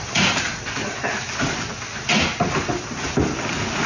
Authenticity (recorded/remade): recorded